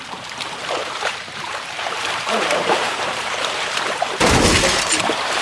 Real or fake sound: fake